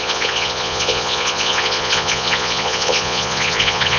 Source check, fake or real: fake